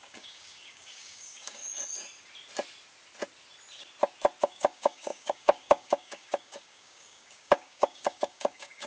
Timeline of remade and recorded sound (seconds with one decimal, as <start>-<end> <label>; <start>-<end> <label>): 0.0-1.6 remade; 1.6-4.4 recorded; 4.4-8.9 remade